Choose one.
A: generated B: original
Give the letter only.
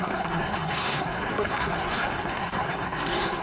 A